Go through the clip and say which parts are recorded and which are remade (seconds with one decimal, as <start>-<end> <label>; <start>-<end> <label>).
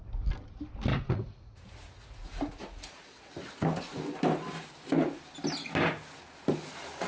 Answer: 0.0-0.9 recorded; 0.9-3.3 remade; 3.3-7.1 recorded